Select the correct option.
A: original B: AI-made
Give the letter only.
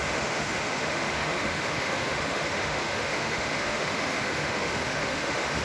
B